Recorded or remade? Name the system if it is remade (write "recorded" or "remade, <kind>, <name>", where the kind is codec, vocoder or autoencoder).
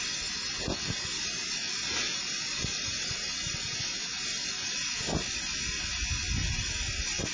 recorded